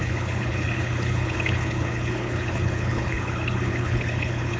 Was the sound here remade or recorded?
remade